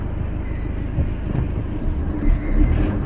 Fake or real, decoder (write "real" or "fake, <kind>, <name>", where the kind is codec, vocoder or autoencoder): real